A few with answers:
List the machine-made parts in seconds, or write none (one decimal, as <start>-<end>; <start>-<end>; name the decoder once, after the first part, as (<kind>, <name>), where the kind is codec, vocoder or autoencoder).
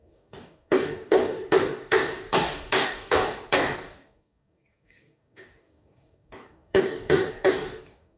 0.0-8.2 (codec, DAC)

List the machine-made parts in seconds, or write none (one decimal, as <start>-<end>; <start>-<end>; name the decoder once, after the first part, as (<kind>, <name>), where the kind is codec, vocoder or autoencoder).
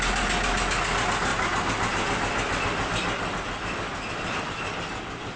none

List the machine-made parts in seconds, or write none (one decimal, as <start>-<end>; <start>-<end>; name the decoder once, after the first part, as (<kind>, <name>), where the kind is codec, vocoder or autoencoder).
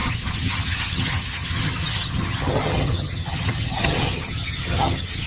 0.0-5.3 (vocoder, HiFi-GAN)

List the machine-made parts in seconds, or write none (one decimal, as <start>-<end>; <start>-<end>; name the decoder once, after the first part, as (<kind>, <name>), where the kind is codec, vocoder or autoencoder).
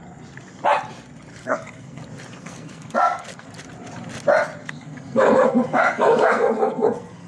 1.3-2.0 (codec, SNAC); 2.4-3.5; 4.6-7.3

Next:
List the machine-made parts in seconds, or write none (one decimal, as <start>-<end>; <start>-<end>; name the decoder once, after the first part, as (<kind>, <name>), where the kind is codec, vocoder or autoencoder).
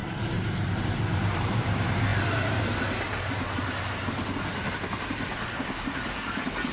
1.1-2.1 (vocoder, BigVGAN v2); 4.7-6.7